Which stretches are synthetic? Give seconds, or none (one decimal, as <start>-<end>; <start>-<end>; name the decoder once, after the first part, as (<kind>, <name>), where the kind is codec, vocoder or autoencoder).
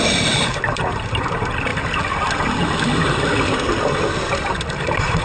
0.0-1.7 (vocoder, BigVGAN v2); 4.8-5.2